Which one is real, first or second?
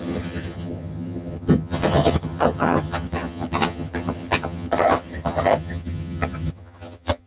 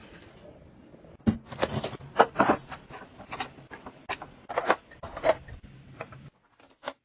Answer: second